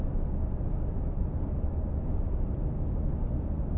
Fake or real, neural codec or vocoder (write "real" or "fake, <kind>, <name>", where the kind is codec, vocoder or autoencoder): real